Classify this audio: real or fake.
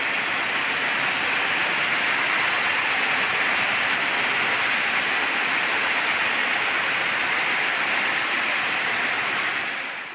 real